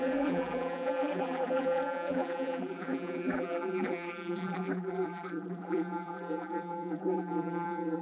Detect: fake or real fake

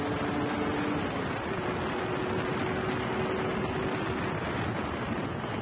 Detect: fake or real real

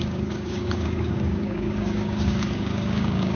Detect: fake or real fake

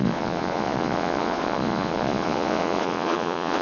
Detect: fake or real fake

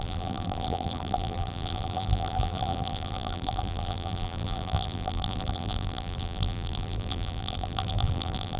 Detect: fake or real fake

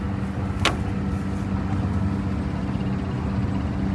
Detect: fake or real real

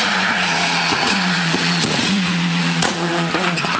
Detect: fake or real fake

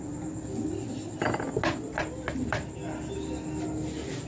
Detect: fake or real real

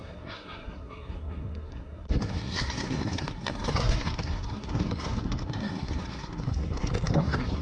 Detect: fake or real fake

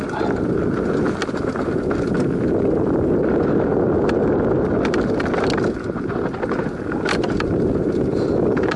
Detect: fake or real real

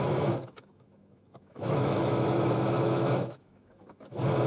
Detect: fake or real fake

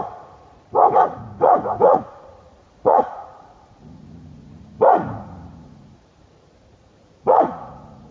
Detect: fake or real fake